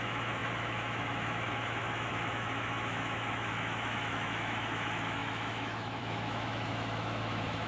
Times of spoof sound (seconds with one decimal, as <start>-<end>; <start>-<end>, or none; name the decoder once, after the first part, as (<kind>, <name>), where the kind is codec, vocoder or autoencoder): 0.0-7.7 (autoencoder, DAC-VAE)